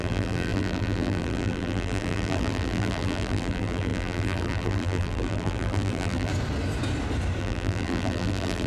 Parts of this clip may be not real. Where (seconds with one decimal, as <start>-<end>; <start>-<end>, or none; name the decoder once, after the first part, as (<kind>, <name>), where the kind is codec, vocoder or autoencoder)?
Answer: 0.0-6.3 (vocoder, BigVGAN v2); 7.4-8.7